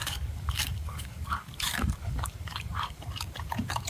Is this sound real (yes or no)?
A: no